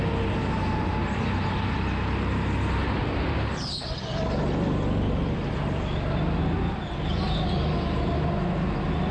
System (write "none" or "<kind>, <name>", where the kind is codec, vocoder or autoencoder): none